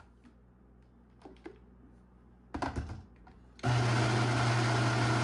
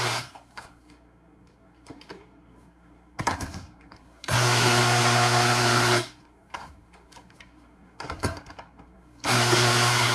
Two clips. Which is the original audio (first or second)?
first